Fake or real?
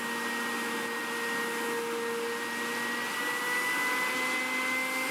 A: real